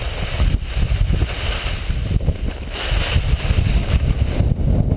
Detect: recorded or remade recorded